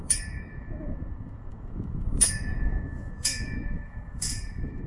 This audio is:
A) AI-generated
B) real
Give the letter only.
A